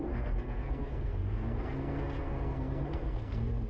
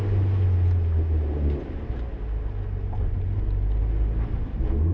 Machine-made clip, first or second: first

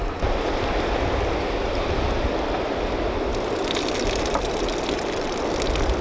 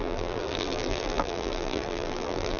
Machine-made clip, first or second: second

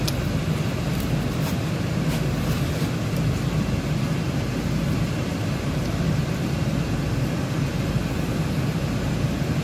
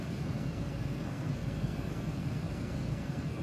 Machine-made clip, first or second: second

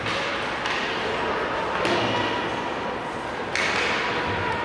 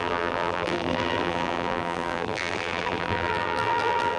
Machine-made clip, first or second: second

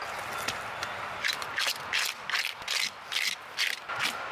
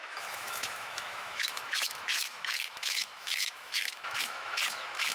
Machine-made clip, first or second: second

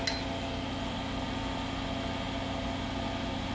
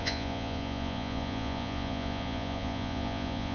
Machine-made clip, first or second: second